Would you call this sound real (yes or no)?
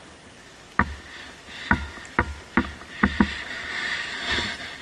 yes